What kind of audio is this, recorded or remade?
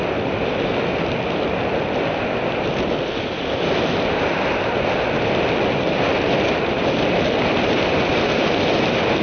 recorded